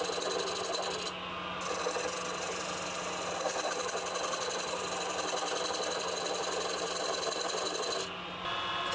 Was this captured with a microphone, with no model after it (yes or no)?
yes